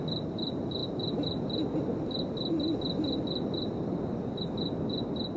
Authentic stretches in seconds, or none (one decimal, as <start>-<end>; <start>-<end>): 0.0-5.4